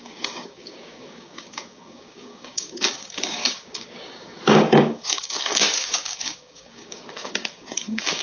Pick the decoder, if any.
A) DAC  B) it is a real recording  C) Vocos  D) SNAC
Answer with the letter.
A